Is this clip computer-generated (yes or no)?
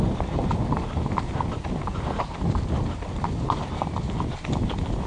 no